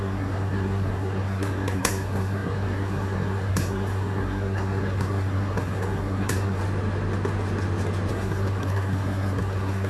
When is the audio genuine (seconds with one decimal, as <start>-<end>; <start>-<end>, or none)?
6.6-8.1